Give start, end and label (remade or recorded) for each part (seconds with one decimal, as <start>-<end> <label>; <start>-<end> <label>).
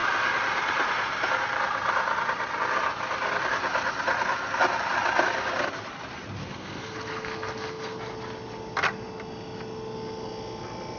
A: 0.0-6.4 recorded; 6.4-8.0 remade; 8.0-11.0 recorded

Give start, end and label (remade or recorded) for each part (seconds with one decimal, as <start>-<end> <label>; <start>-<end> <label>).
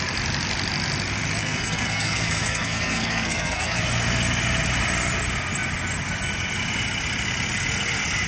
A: 0.0-1.4 recorded; 1.4-3.8 remade; 3.8-8.3 recorded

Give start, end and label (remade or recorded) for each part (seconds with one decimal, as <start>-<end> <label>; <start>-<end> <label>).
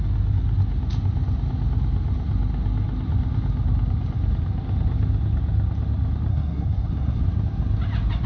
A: 0.0-6.3 recorded; 6.3-7.2 remade; 7.2-8.3 recorded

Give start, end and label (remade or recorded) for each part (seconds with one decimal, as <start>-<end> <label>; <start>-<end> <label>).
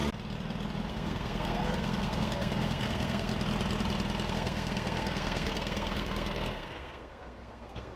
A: 0.0-0.9 recorded; 0.9-3.3 remade; 3.3-4.3 recorded; 4.3-8.0 remade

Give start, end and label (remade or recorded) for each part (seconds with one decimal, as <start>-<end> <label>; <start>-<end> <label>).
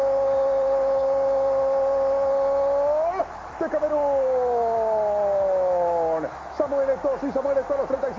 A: 0.0-8.2 recorded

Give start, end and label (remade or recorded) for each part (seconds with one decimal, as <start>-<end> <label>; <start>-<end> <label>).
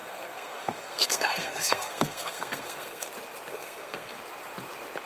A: 0.0-3.1 remade; 3.1-3.5 recorded; 3.5-4.2 remade; 4.2-5.1 recorded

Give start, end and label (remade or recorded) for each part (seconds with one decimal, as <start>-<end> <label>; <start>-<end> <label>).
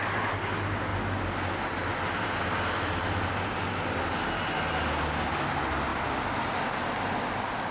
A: 0.0-7.7 recorded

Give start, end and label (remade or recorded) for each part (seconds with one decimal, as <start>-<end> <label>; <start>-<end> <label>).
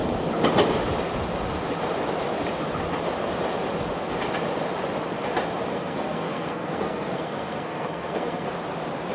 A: 0.0-5.7 recorded; 5.7-8.5 remade; 8.5-9.1 recorded